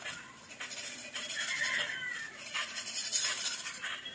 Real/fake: real